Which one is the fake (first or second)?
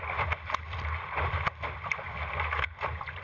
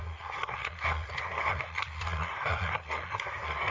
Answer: second